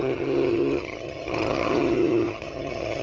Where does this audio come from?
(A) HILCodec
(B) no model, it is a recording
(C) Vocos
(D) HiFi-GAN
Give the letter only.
D